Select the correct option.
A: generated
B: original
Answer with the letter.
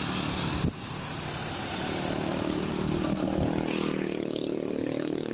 B